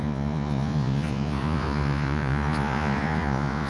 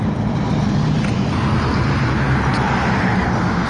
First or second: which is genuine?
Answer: second